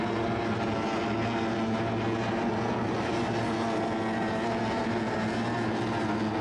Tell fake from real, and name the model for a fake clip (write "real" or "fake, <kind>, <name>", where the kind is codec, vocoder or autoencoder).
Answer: real